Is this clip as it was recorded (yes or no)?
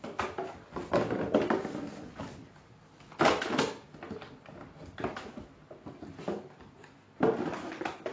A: yes